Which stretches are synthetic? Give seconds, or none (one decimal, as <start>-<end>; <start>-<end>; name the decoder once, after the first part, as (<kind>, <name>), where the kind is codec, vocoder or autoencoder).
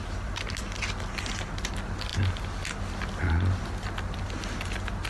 none